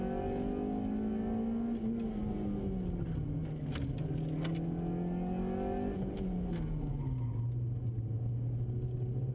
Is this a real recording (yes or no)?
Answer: yes